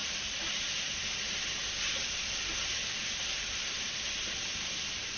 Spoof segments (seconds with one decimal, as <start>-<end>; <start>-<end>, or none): 0.0-1.0